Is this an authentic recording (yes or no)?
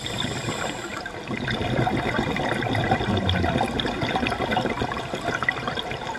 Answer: yes